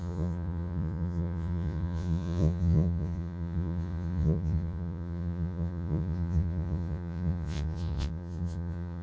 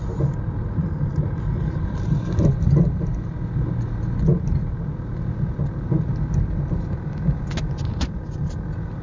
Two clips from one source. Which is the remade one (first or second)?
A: first